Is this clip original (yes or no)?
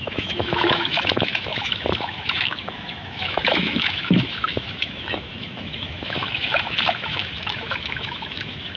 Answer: no